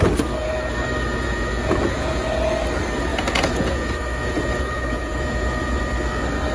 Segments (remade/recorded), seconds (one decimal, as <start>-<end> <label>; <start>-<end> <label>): 0.0-1.1 recorded; 1.1-2.4 remade; 2.4-3.1 recorded; 3.1-5.8 remade; 5.8-6.5 recorded

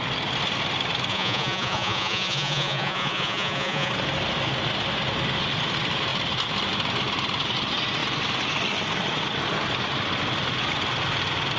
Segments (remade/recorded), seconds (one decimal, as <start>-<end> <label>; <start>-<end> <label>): 0.0-1.1 recorded; 1.1-3.9 remade; 3.9-11.6 recorded

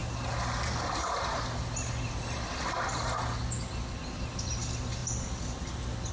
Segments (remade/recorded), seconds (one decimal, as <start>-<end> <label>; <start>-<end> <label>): 0.0-6.1 recorded

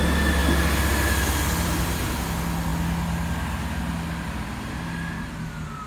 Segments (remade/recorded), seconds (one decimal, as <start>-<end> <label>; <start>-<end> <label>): 0.0-5.9 recorded